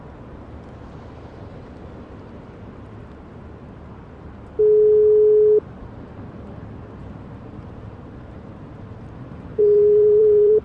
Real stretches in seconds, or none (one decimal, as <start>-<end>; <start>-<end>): 0.0-7.0